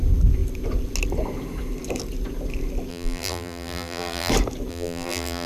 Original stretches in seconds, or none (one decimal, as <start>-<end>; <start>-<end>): 0.0-2.9; 4.3-4.7